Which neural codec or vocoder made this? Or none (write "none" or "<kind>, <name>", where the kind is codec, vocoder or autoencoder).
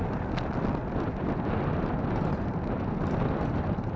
none